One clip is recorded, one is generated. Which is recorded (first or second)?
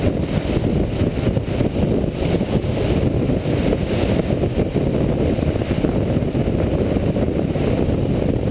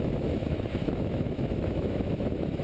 first